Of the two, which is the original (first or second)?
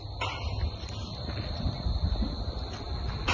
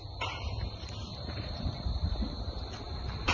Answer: first